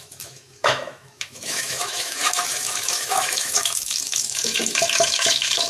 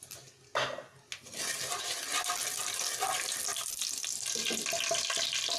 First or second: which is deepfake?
first